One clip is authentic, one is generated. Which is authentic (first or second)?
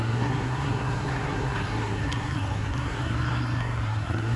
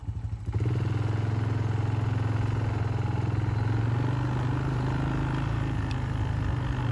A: second